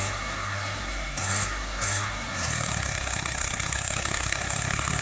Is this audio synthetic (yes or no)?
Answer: yes